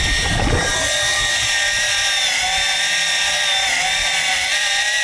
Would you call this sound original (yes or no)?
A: no